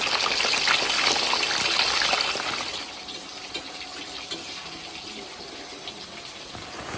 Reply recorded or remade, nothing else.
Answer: recorded